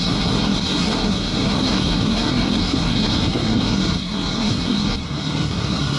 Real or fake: fake